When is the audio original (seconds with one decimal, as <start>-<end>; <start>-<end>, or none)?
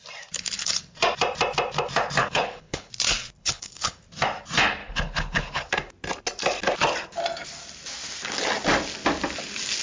0.0-2.2; 2.9-3.4; 4.0-4.8; 5.7-9.8